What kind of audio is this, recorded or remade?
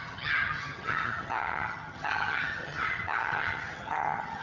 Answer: remade